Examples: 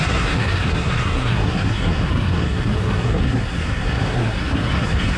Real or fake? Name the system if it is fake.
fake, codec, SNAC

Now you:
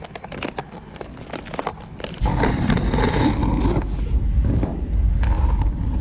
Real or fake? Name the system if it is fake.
real